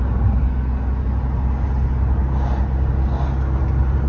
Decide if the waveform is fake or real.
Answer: real